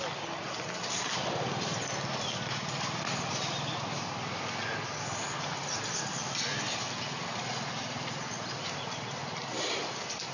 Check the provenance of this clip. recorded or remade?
recorded